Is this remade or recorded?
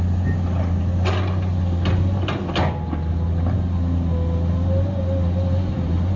recorded